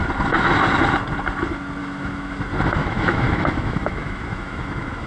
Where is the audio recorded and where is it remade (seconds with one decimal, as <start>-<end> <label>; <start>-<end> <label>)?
0.0-1.8 recorded; 1.8-2.4 remade; 2.4-2.8 recorded; 2.8-5.1 remade